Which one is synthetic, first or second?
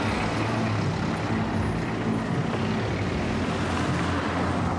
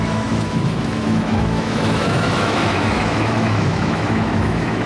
second